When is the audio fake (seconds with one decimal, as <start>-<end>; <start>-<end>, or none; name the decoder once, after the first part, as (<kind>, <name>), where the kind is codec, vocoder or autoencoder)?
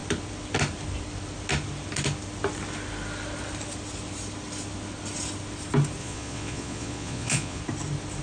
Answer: 6.0-7.6 (vocoder, Vocos)